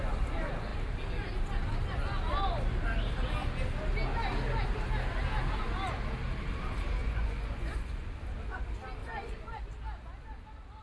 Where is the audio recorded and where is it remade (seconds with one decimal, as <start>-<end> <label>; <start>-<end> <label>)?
0.0-7.0 recorded; 7.0-8.1 remade; 8.1-9.0 recorded; 9.0-9.6 remade; 9.6-10.8 recorded